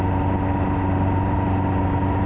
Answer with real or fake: real